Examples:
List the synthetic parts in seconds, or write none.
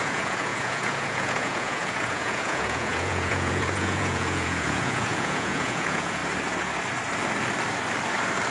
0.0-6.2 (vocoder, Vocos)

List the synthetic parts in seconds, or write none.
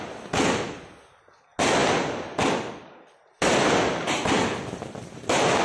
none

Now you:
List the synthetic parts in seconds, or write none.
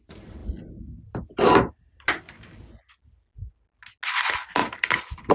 none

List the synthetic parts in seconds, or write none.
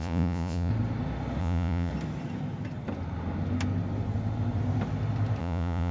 0.0-0.7 (vocoder, Vocos); 1.4-1.9; 5.4-5.9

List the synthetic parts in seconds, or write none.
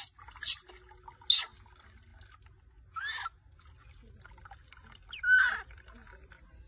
none